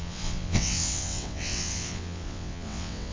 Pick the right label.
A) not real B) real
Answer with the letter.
A